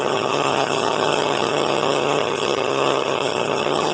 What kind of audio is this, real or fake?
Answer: fake